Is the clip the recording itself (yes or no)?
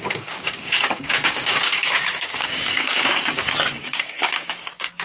no